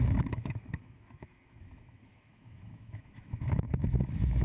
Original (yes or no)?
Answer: no